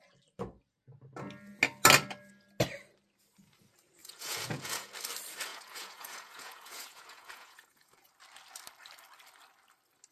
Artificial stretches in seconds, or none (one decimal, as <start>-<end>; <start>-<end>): 4.0-4.9; 5.5-8.1